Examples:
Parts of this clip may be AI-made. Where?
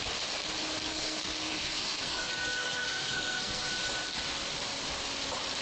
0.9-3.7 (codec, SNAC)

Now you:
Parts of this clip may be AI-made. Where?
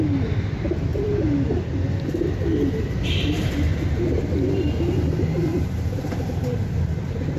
3.7-4.3 (vocoder, BigVGAN v2); 5.5-6.0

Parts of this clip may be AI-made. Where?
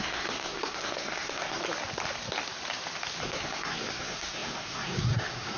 0.0-1.6 (codec, SNAC); 3.2-5.6